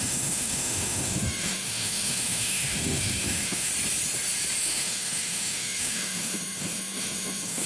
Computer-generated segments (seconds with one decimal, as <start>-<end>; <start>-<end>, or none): 0.0-3.7; 4.6-7.7